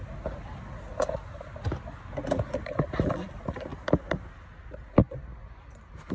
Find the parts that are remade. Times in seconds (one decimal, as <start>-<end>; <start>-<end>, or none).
none